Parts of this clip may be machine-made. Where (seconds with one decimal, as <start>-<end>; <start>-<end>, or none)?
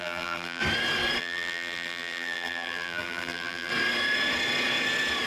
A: 0.0-0.6; 1.2-3.7